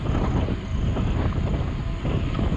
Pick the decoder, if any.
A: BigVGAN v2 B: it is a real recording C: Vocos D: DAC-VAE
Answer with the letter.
B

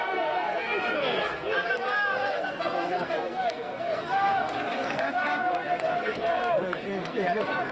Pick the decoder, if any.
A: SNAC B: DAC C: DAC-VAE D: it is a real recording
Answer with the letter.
A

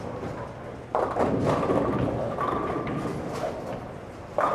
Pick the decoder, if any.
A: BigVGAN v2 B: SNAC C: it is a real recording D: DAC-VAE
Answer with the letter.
C